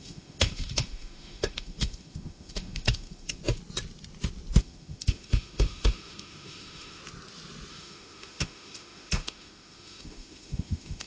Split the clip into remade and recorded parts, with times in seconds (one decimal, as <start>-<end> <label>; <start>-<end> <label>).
0.0-3.4 remade; 3.4-4.6 recorded; 4.6-7.0 remade; 7.0-7.7 recorded; 7.7-11.1 remade